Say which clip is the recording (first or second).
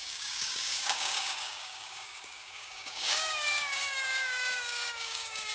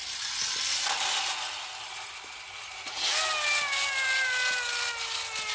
second